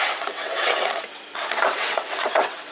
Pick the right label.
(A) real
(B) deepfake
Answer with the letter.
B